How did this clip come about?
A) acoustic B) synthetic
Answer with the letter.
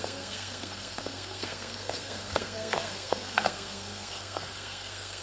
B